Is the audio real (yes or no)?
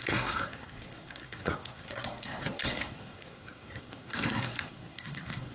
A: no